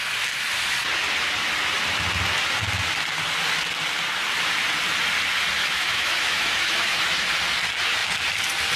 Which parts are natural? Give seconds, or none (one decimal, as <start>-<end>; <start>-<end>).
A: 0.0-5.6; 7.0-8.8